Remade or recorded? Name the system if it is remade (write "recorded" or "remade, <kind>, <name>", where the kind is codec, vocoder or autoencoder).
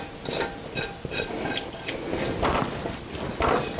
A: recorded